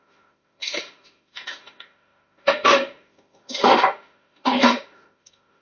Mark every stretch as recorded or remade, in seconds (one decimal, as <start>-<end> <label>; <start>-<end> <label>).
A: 0.0-5.6 remade